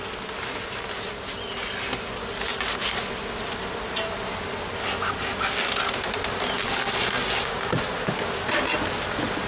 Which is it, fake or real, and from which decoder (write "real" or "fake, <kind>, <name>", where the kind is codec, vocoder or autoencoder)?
real